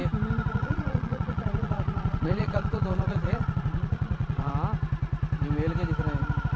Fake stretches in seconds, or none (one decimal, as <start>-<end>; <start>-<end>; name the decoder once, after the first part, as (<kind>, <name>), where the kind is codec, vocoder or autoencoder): 0.5-4.5 (vocoder, Vocos)